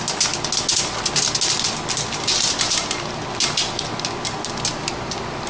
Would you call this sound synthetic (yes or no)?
no